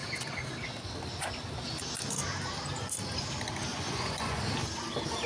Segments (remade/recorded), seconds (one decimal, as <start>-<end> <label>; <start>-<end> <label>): 0.0-3.7 recorded; 3.7-4.4 remade; 4.4-5.3 recorded